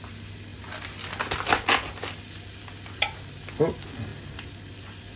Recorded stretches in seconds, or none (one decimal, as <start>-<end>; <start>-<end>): 0.0-5.2